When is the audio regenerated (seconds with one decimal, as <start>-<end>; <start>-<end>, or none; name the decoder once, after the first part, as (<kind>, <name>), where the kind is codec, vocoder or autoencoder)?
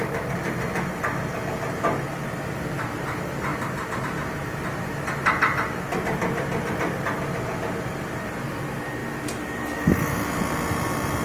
3.5-4.5 (vocoder, BigVGAN v2)